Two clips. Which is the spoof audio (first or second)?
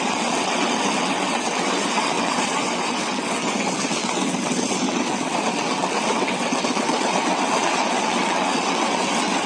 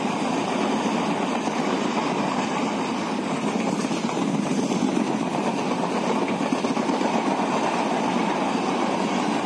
first